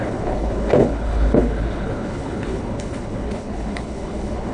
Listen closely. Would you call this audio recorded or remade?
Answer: remade